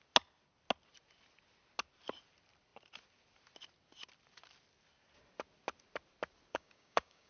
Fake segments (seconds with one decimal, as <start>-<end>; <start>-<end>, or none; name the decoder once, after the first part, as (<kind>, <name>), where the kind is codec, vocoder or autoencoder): 6.5-7.3 (codec, DAC)